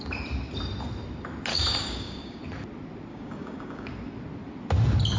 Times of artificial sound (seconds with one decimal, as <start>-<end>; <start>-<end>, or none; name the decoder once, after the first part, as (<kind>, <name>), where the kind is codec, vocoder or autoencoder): 1.5-2.4 (codec, DAC); 3.1-3.9